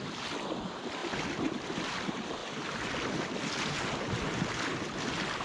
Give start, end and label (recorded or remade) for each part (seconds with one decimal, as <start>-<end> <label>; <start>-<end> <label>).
0.0-5.4 recorded